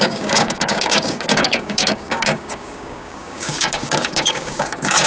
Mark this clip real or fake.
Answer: fake